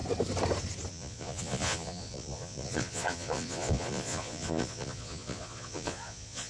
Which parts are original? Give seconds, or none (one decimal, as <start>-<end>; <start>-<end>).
0.0-0.9